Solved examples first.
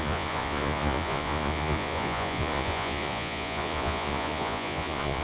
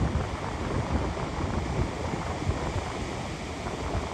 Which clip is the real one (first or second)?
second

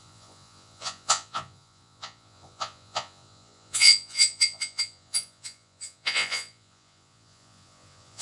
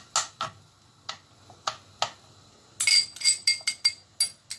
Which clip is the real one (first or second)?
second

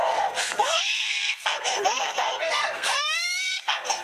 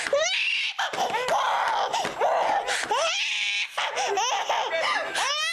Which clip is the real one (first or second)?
second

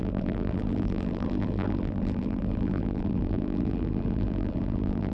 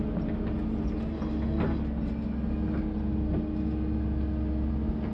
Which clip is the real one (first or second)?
second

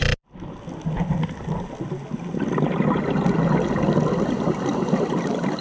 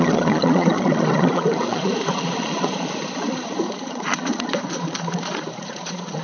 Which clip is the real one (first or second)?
first